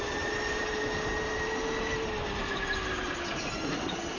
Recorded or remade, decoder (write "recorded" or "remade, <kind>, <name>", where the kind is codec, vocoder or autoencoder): recorded